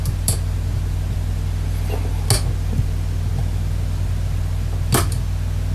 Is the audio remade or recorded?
recorded